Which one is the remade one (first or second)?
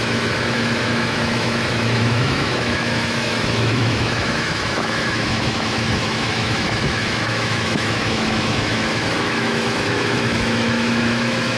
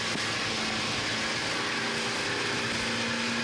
first